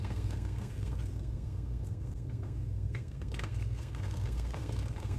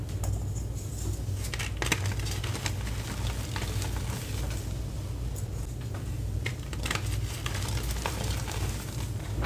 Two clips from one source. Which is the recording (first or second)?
second